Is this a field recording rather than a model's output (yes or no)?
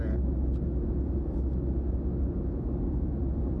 yes